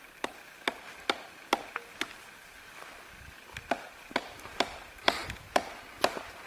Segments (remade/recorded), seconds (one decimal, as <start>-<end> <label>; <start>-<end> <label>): 0.0-6.5 recorded